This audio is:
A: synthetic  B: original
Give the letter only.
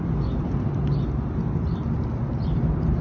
B